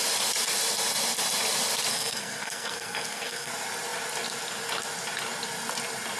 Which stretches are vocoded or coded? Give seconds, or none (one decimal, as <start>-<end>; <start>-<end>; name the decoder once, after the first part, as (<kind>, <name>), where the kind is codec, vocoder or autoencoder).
1.9-3.5 (codec, SNAC)